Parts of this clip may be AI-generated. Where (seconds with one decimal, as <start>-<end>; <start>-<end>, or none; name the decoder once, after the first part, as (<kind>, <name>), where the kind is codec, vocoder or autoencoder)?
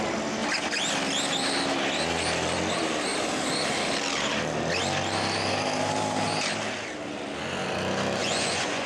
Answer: 8.2-8.9 (vocoder, Vocos)